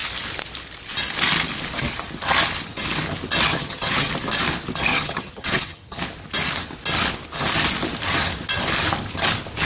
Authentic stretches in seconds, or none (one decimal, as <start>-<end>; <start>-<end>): 0.0-3.5; 4.1-4.9; 6.0-9.6